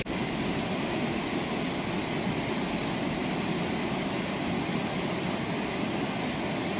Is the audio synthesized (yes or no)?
no